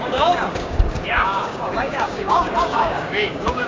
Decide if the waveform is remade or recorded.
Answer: remade